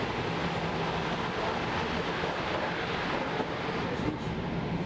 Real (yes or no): yes